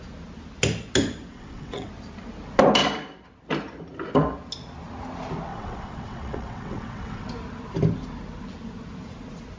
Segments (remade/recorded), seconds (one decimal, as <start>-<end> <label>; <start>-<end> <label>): 0.0-1.3 recorded; 1.3-1.9 remade; 1.9-5.5 recorded; 5.5-7.3 remade; 7.3-9.6 recorded